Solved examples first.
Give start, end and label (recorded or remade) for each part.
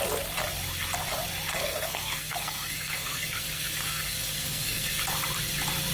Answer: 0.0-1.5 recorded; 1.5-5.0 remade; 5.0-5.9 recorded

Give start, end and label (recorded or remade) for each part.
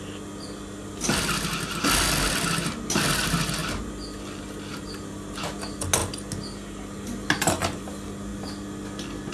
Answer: 0.0-9.3 recorded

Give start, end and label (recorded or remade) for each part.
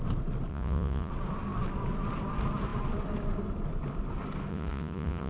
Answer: 0.0-0.5 recorded; 0.5-1.1 remade; 1.1-4.5 recorded; 4.5-5.3 remade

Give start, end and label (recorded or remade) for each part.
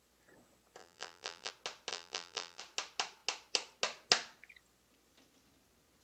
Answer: 0.0-0.8 recorded; 0.8-1.5 remade; 1.5-1.9 recorded; 1.9-2.6 remade; 2.6-6.0 recorded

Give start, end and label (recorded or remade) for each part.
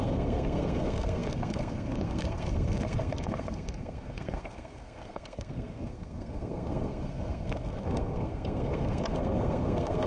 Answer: 0.0-10.1 remade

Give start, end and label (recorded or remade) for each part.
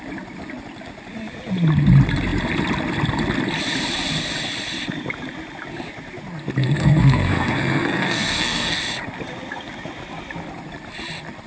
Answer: 0.0-6.6 recorded; 6.6-8.8 remade; 8.8-11.5 recorded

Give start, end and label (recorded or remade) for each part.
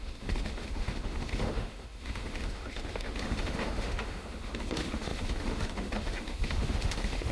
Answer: 0.0-7.3 remade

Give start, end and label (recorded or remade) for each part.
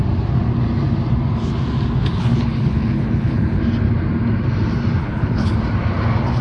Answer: 0.0-2.1 recorded; 2.1-3.6 remade; 3.6-5.0 recorded; 5.0-5.5 remade; 5.5-6.4 recorded